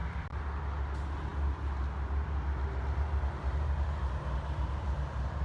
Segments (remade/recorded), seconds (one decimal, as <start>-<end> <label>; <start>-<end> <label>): 0.0-0.6 remade; 0.6-5.4 recorded